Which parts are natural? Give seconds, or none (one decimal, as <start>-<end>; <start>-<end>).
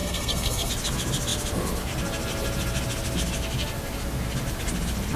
0.7-5.2